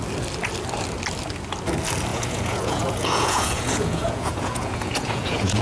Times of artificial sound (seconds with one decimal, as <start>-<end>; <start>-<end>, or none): 2.1-5.6